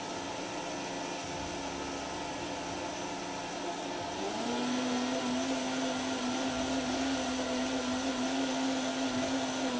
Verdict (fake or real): real